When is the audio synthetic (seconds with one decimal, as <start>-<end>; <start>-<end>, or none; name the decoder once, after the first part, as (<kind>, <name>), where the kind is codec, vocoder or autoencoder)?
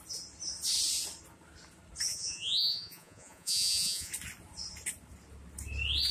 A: 2.1-4.1 (vocoder, Vocos)